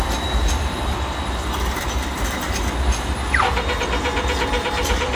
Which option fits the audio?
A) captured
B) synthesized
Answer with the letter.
A